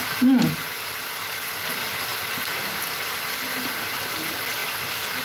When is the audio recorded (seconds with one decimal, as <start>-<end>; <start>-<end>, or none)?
0.0-5.2

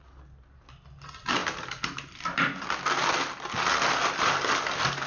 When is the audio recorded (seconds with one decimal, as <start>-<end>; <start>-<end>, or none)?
0.0-5.1

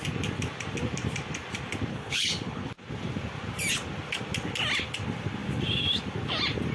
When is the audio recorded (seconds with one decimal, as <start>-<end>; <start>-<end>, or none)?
0.0-1.9; 2.7-6.7

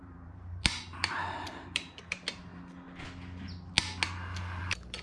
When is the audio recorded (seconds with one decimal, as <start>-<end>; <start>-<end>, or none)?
2.5-4.6

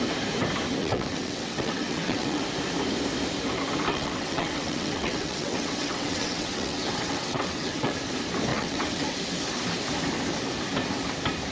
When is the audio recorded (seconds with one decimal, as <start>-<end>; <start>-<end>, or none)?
0.0-0.8; 2.4-3.9; 8.0-8.5; 9.2-11.5

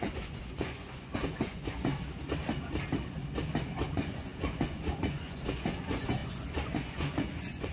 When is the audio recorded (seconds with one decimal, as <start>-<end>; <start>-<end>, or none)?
1.9-3.9

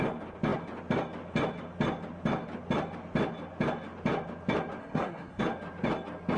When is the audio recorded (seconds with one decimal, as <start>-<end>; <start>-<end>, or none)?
0.0-4.8; 5.4-6.4